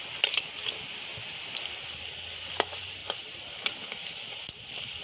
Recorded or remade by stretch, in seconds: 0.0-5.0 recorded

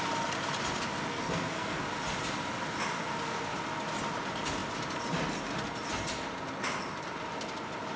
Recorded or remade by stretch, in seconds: 0.0-1.1 recorded; 1.1-1.8 remade; 1.8-8.0 recorded

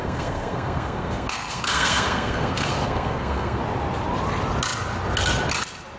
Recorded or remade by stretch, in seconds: 0.0-3.6 remade; 3.6-6.0 recorded

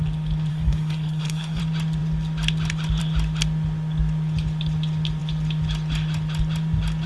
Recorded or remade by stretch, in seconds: 0.0-0.5 recorded; 0.5-1.6 remade; 1.6-7.1 recorded

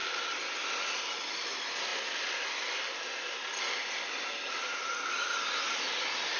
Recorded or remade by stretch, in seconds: 0.0-6.4 recorded